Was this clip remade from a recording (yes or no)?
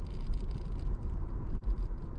no